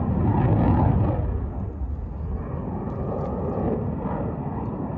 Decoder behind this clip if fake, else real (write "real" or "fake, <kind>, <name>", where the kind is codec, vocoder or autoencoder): real